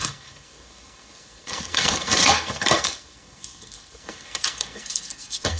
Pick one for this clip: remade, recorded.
remade